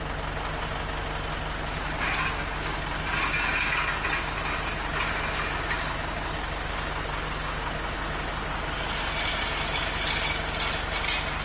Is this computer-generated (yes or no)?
no